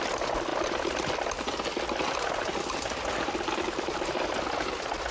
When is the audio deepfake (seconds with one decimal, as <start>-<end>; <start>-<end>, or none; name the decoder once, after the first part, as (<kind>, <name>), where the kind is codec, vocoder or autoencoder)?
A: none